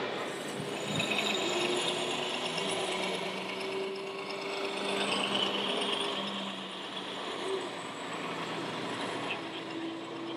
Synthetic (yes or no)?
no